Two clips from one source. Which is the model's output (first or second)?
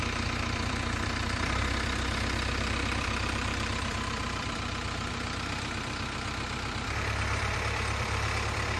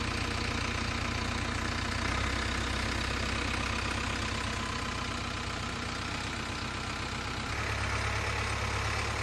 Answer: first